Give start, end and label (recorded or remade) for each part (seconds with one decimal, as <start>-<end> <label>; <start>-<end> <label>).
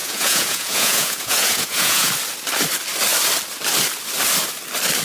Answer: 0.0-2.1 remade; 2.1-5.0 recorded